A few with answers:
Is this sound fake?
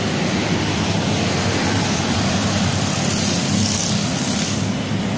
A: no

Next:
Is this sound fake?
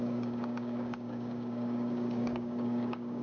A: yes